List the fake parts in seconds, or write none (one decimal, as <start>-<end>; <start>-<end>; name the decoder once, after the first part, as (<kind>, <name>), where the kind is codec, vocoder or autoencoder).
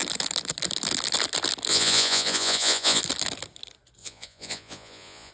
1.7-3.0 (vocoder, Vocos); 4.0-5.3